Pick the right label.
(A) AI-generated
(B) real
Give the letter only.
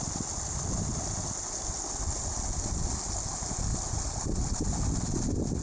B